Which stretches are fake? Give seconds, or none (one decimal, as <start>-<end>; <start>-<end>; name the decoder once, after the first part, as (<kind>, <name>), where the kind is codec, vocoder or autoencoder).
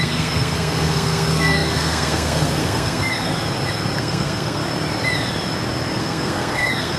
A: 0.0-3.3 (codec, SNAC); 4.0-4.6; 6.0-7.0